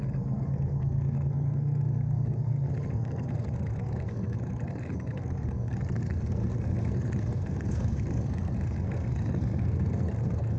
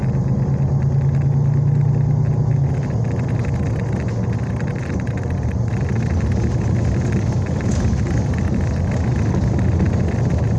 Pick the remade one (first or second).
first